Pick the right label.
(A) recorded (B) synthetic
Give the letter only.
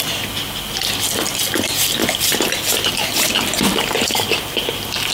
A